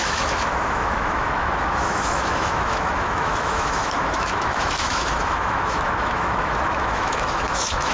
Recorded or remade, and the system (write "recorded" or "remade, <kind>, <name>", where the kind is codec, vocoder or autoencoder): remade, autoencoder, DAC-VAE